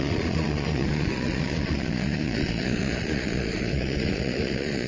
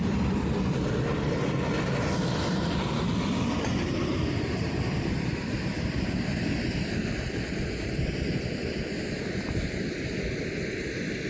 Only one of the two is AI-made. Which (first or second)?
first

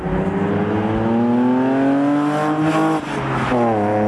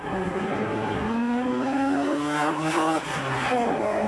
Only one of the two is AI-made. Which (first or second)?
second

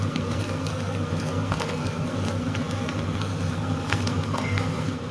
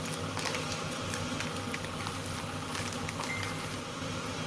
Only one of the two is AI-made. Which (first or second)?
first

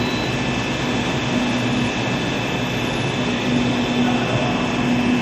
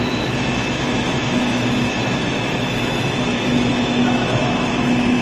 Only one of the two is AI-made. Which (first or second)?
second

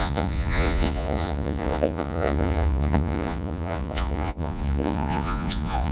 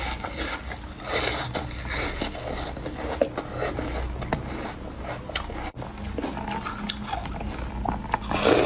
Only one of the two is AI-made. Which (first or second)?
first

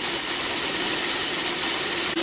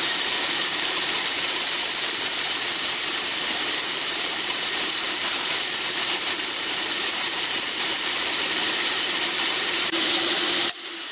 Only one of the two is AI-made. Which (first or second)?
second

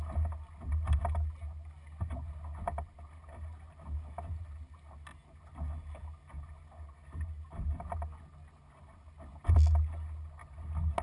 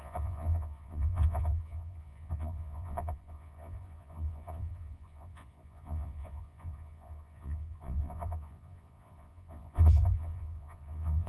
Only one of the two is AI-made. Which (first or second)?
second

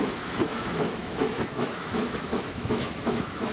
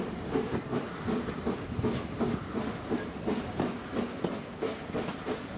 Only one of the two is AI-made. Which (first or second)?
first